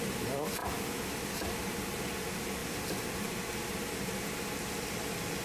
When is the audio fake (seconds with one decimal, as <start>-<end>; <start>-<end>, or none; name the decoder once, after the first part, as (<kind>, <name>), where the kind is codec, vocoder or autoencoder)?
none